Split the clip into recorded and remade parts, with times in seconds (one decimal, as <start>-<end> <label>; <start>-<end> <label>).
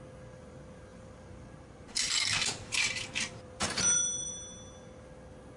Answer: 0.0-0.9 recorded; 0.9-4.3 remade; 4.3-5.6 recorded